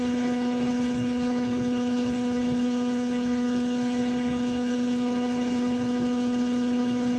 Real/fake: fake